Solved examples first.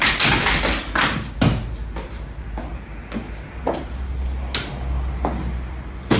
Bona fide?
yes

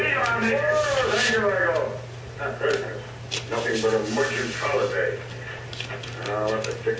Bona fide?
yes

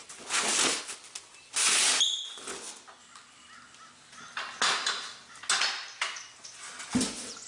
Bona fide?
yes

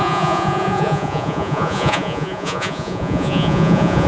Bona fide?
no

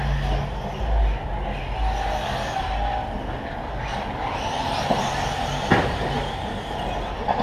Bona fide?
yes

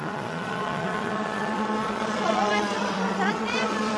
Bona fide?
no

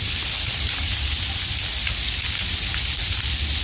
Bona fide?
yes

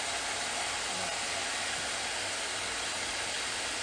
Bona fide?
yes